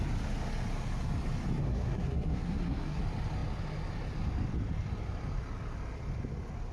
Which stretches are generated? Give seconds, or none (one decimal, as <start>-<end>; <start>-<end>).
1.6-3.0